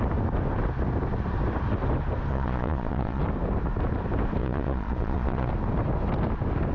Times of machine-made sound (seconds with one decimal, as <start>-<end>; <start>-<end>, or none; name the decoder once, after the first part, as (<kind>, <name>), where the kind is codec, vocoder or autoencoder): 2.3-3.2 (vocoder, Vocos); 4.4-5.5